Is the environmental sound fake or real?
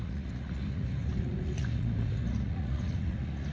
fake